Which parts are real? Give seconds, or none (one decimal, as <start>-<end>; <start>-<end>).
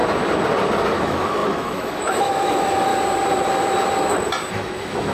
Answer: 0.0-1.0; 2.9-4.5